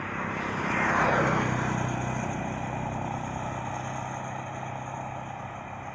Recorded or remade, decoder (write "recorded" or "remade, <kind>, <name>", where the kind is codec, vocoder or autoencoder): recorded